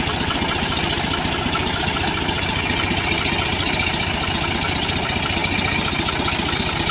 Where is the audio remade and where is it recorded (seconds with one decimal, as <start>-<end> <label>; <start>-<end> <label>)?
0.0-6.9 recorded